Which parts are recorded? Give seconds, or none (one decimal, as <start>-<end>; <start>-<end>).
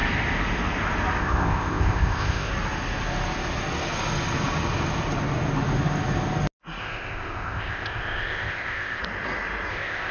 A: 0.0-1.2; 2.5-6.8; 9.0-9.7